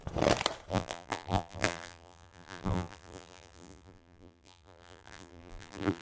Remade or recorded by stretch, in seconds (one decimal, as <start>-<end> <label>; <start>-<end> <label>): 0.0-0.7 recorded; 0.7-6.0 remade